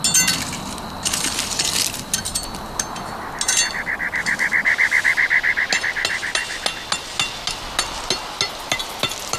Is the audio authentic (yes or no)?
yes